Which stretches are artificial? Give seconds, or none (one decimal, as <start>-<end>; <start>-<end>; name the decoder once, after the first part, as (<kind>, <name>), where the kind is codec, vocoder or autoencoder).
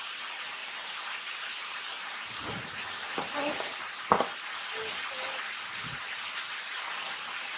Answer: 0.6-3.9 (vocoder, BigVGAN v2)